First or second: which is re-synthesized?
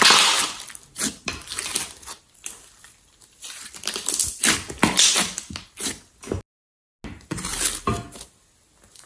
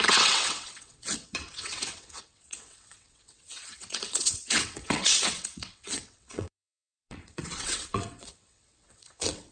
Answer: second